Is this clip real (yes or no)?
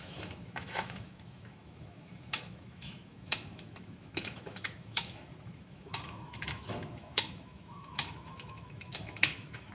no